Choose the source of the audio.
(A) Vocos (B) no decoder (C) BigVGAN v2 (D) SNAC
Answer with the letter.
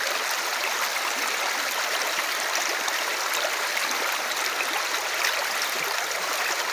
B